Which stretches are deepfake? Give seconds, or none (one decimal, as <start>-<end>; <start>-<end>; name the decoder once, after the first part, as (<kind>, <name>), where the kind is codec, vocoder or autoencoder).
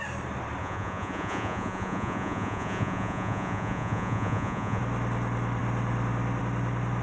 0.6-4.8 (vocoder, Vocos)